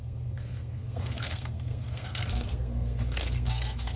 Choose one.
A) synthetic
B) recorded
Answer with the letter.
A